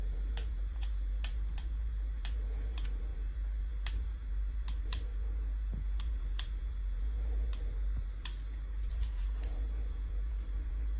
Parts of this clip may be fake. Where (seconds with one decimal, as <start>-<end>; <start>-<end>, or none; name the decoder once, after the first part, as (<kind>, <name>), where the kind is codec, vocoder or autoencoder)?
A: 0.0-11.0 (vocoder, BigVGAN v2)